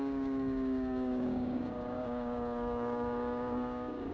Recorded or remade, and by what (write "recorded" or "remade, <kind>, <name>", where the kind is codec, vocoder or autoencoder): remade, codec, DAC